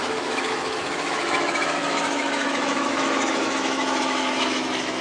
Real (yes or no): no